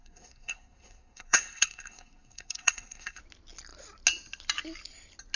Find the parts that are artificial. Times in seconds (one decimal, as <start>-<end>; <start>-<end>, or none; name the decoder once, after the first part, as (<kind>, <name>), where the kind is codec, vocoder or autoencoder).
0.0-3.2 (codec, SNAC)